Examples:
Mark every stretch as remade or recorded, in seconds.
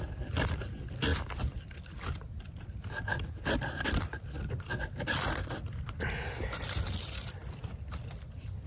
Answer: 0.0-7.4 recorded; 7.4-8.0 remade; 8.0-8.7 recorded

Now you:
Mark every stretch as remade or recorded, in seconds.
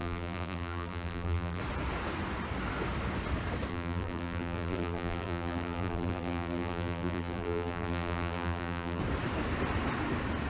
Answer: 0.0-1.6 remade; 1.6-3.7 recorded; 3.7-9.0 remade; 9.0-10.5 recorded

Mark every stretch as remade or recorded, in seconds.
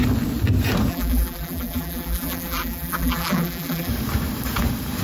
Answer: 0.0-0.9 recorded; 0.9-3.9 remade; 3.9-5.0 recorded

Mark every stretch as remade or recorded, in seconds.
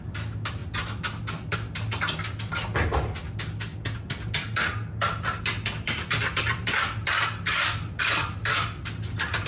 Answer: 0.0-0.6 remade; 0.6-5.4 recorded; 5.4-9.5 remade